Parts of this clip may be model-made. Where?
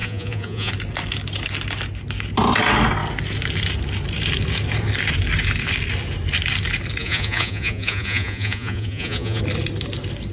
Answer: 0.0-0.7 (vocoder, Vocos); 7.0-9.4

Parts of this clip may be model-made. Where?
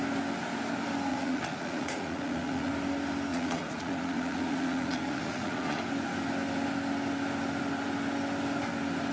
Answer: 1.1-2.7 (vocoder, Vocos); 3.3-5.8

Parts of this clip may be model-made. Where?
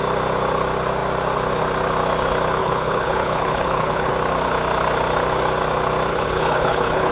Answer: 2.6-4.1 (codec, HILCodec); 6.1-7.1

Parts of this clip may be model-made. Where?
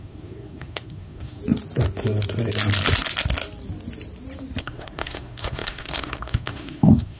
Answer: 0.0-1.4 (codec, SNAC); 4.6-7.2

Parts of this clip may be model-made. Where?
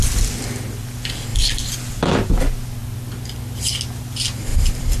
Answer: 1.3-2.4 (vocoder, BigVGAN v2); 4.5-5.0